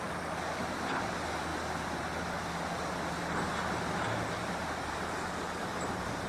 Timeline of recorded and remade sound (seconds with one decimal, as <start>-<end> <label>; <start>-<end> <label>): 0.0-6.3 recorded